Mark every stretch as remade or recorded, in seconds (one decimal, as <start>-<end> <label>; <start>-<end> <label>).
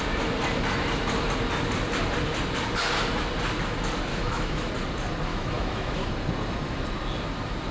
0.0-4.1 recorded; 4.1-4.7 remade; 4.7-5.3 recorded; 5.3-6.1 remade; 6.1-7.7 recorded